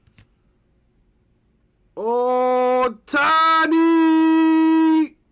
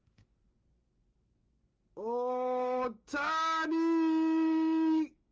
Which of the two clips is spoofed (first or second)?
second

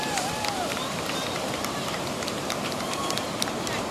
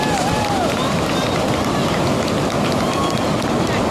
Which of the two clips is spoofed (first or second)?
first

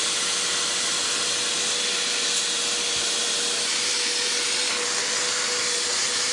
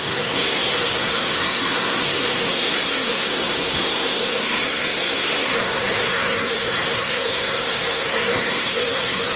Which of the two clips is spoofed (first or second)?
second